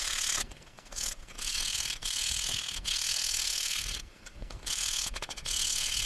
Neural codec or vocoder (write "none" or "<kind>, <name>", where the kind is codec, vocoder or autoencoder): codec, SNAC